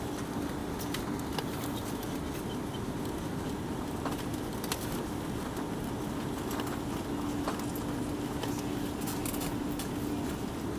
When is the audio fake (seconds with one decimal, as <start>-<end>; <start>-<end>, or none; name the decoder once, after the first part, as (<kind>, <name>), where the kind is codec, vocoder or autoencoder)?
none